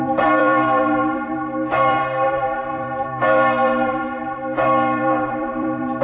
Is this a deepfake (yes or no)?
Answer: yes